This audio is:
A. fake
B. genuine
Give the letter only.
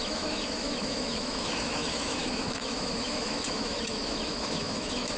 A